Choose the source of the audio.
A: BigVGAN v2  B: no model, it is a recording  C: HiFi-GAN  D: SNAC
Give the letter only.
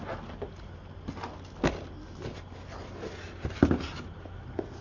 B